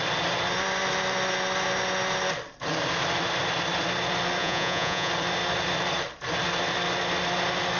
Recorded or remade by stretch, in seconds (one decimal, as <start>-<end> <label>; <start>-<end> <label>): 0.0-4.4 recorded; 4.4-5.1 remade; 5.1-7.8 recorded